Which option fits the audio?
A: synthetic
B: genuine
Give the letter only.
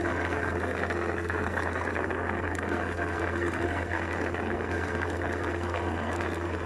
A